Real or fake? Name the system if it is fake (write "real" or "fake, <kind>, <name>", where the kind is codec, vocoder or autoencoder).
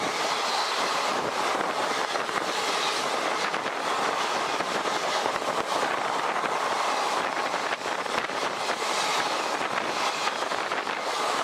real